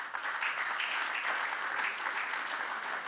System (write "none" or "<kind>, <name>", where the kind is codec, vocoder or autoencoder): none